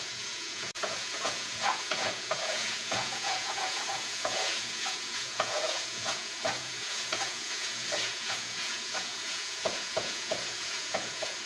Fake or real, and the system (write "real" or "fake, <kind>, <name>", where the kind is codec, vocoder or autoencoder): fake, vocoder, Vocos